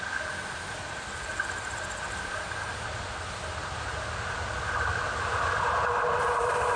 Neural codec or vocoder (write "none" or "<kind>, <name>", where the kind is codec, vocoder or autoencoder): none